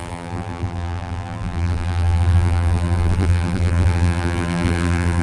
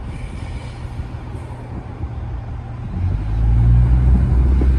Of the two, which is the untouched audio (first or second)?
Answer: second